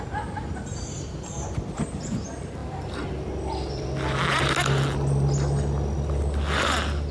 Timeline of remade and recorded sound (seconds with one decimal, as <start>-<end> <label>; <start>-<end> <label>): 0.0-7.1 recorded